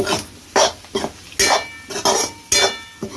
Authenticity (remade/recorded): recorded